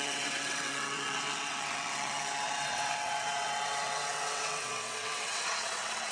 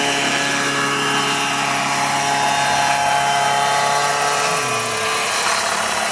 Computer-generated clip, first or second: first